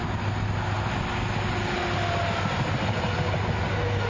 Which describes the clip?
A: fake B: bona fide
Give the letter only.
B